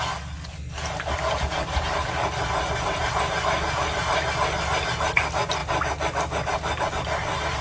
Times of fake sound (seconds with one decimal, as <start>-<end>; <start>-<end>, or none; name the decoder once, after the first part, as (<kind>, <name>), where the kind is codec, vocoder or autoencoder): none